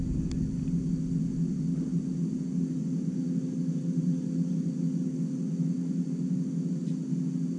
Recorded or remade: recorded